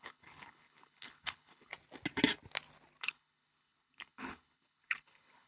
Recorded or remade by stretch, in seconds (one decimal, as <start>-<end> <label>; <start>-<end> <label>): 0.0-1.7 remade; 1.7-3.0 recorded; 3.0-5.5 remade